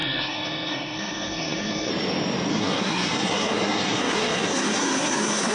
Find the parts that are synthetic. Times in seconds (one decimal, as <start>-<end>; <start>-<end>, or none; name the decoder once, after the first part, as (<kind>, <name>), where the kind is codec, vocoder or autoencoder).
0.0-1.9 (codec, SNAC); 2.5-5.5